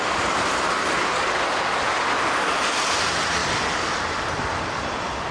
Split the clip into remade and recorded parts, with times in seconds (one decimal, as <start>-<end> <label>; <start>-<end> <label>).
0.0-5.3 recorded